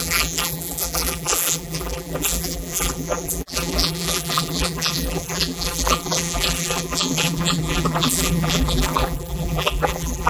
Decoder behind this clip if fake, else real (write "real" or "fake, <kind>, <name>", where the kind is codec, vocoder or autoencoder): fake, vocoder, BigVGAN v2